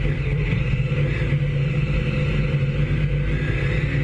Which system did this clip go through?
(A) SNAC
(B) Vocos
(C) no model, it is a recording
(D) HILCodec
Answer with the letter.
C